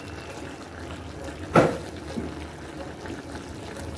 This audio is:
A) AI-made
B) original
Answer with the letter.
B